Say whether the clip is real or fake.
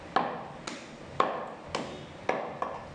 real